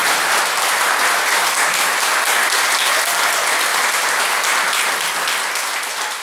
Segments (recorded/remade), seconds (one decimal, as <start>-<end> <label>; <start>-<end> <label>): 0.0-2.1 remade; 2.1-3.7 recorded; 3.7-4.2 remade; 4.2-6.2 recorded